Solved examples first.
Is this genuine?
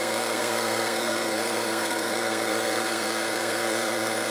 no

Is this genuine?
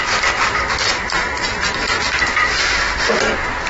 yes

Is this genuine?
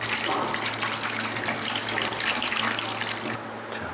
yes